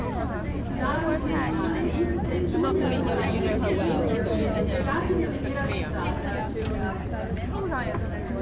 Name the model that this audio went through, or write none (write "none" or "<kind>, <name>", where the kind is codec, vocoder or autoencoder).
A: none